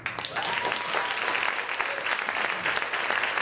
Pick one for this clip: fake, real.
real